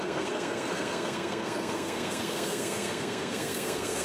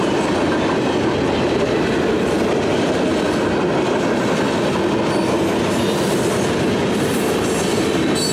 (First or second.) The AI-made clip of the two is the first